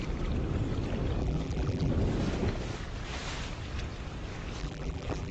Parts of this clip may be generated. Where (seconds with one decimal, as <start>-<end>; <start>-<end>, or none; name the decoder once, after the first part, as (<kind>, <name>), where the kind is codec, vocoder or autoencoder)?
1.2-1.9 (vocoder, BigVGAN v2); 4.6-5.3